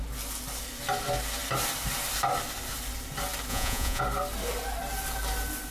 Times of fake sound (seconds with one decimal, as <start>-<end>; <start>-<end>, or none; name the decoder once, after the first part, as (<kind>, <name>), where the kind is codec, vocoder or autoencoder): 3.5-4.0 (vocoder, Vocos)